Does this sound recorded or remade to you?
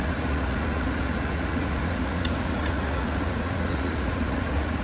remade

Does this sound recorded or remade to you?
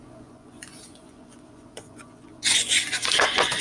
remade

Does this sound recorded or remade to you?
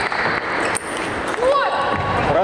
recorded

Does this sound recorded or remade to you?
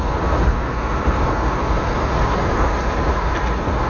recorded